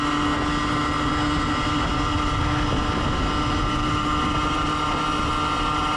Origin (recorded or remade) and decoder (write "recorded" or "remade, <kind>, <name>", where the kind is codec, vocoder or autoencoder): recorded